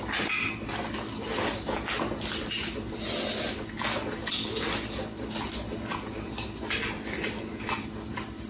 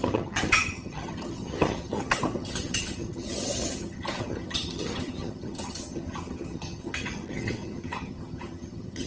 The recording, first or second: first